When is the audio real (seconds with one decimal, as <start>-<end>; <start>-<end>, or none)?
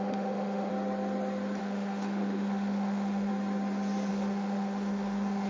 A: 0.7-1.6; 3.3-4.1